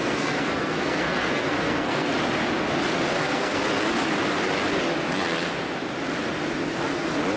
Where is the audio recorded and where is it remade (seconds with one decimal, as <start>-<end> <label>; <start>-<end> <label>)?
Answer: 0.0-2.1 remade; 2.1-3.2 recorded; 3.2-3.6 remade; 3.6-7.4 recorded